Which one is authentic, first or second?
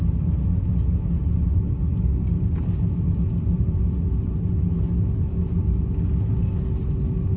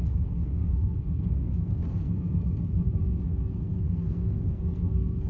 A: first